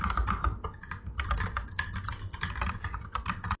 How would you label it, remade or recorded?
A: recorded